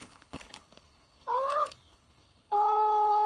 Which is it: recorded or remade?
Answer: remade